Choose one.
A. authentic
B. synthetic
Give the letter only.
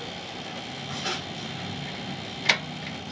A